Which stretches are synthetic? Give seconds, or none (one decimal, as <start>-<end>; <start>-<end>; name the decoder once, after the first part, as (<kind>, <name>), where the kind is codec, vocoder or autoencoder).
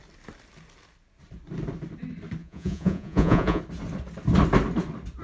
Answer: 2.4-3.6 (vocoder, Vocos)